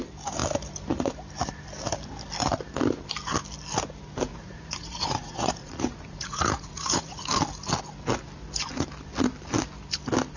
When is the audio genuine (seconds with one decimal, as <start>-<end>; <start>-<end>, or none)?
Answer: 0.0-4.3; 7.3-10.4